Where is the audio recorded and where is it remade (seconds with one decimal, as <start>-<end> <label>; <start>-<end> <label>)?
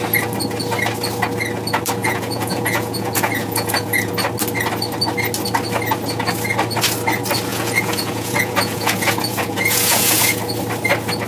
0.0-2.0 recorded; 2.0-4.1 remade; 4.1-7.5 recorded; 7.5-10.4 remade; 10.4-11.3 recorded